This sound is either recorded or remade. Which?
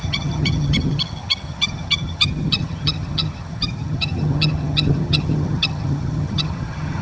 remade